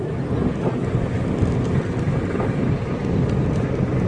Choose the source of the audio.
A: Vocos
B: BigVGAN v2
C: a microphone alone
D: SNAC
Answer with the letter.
C